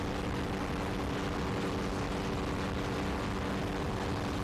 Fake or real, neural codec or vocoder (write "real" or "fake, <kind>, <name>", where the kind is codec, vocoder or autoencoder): real